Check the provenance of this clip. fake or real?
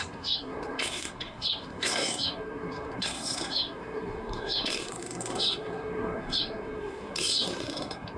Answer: fake